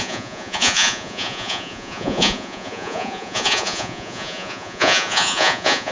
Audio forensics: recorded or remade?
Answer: remade